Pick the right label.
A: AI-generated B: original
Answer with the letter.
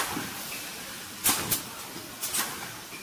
B